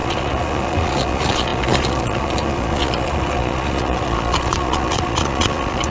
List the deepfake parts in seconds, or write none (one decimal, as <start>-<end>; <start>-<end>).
0.0-5.9